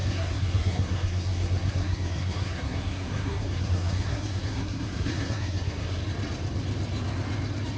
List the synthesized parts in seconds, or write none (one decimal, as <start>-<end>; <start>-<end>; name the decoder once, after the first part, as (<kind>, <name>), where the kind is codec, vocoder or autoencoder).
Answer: 0.0-6.0 (codec, SNAC)